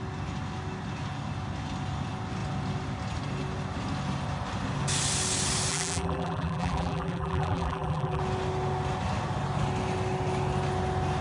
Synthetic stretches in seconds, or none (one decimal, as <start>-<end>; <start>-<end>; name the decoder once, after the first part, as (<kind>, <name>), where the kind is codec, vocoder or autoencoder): 5.7-8.2 (vocoder, BigVGAN v2)